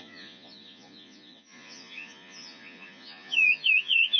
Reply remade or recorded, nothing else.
remade